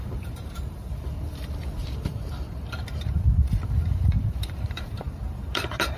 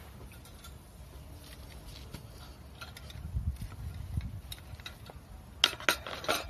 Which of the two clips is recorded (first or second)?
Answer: second